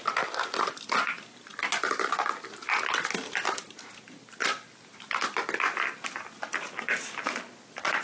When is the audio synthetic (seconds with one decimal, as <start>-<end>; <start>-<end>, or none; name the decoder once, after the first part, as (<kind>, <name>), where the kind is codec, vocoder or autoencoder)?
none